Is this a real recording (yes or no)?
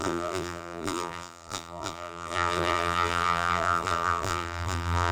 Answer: no